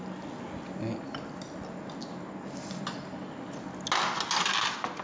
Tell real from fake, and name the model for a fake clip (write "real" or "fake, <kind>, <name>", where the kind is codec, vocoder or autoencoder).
real